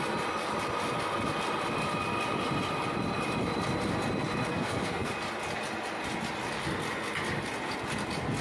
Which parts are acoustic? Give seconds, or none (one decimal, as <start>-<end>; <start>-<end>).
0.0-4.5; 5.1-8.4